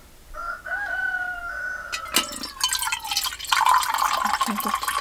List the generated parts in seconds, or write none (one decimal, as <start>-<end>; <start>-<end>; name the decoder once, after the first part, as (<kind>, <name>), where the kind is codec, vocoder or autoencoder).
none